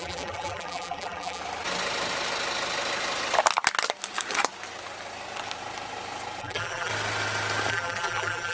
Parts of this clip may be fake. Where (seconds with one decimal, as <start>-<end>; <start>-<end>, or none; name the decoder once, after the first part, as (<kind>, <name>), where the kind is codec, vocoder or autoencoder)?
0.0-1.4 (vocoder, BigVGAN v2); 6.4-6.9; 7.7-8.5